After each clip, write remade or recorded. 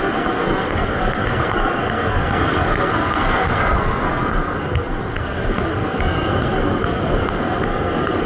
remade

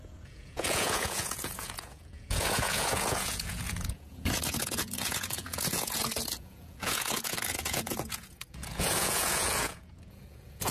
remade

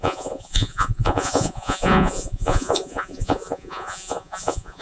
remade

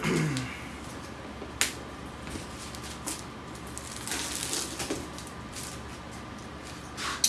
recorded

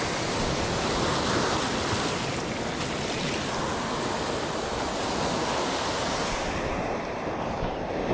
recorded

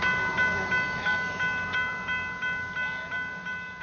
recorded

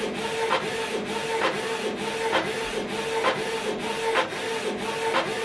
recorded